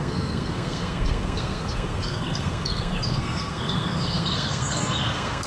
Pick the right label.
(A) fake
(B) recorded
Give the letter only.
A